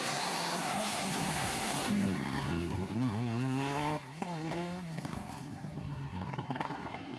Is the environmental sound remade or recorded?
remade